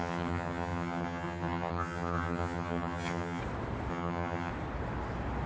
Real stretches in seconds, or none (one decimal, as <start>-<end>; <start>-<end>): 3.4-3.9; 4.5-5.5